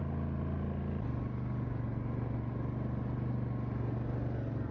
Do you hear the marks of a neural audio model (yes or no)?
no